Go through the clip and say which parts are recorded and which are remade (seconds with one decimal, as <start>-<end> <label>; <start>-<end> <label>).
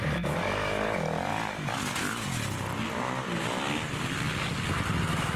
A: 0.0-5.4 recorded